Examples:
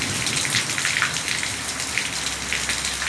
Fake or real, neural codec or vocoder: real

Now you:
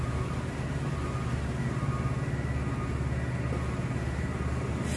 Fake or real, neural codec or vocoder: real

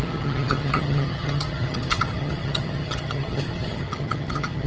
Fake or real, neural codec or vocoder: fake, vocoder, HiFi-GAN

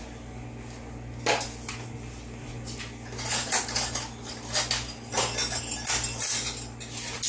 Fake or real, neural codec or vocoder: real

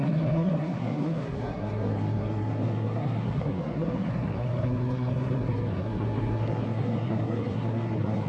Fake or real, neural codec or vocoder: fake, codec, SNAC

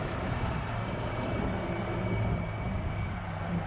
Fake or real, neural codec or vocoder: real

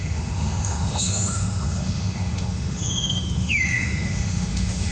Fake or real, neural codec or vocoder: fake, autoencoder, DAC-VAE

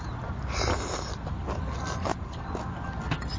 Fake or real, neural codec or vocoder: real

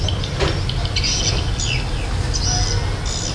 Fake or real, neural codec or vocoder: real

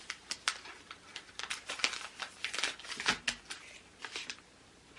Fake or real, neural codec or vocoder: real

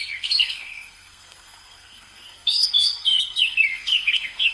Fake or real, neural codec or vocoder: fake, codec, SNAC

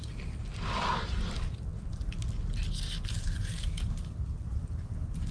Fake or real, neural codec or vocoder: real